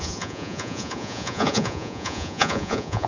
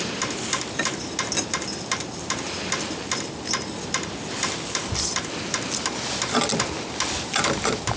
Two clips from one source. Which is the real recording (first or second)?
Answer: second